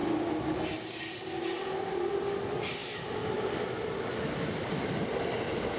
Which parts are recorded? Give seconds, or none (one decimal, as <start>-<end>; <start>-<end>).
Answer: 0.0-5.8